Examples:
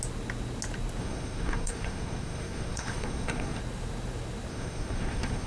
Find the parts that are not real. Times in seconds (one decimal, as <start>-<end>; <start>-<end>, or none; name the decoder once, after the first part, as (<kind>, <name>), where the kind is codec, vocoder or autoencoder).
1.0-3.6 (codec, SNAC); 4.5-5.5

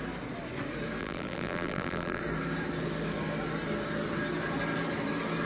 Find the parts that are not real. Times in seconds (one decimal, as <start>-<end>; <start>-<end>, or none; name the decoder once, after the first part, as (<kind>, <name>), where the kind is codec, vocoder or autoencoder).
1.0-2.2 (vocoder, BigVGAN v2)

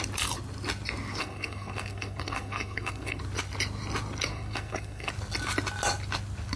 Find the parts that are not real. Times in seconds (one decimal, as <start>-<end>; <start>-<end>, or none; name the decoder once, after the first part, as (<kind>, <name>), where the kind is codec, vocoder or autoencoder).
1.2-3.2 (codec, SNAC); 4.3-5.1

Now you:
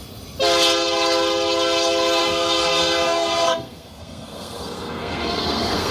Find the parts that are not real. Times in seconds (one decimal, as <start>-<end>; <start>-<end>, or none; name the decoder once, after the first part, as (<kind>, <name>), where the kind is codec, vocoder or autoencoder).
2.2-5.9 (codec, SNAC)

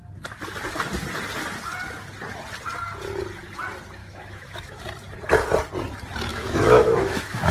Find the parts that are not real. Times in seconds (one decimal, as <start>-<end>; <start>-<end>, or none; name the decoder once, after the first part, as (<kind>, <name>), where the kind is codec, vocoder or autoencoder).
4.0-4.8 (autoencoder, DAC-VAE); 6.3-7.5